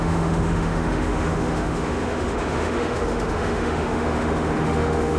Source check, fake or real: fake